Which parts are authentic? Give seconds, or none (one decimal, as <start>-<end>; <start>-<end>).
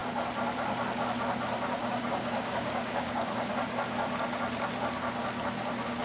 0.0-1.8; 3.5-6.0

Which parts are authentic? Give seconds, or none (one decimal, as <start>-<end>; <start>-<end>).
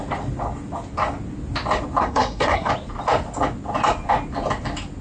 0.0-2.0; 2.7-5.0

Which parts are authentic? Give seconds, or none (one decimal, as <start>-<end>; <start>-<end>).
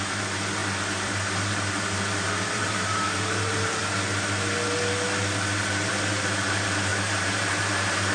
3.8-5.9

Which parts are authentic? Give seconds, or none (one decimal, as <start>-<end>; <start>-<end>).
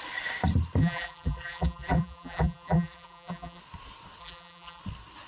0.0-0.8; 3.6-4.2; 4.8-5.3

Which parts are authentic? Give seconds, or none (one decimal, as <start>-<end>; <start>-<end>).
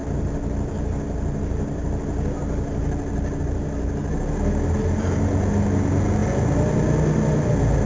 3.4-7.9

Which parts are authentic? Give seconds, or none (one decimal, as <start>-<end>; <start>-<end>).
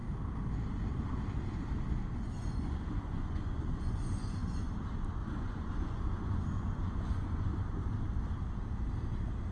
0.0-2.4; 4.7-5.2; 7.6-9.5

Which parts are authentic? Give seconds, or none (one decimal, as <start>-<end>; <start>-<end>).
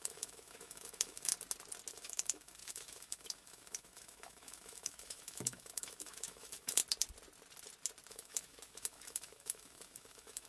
1.3-1.9; 6.8-8.1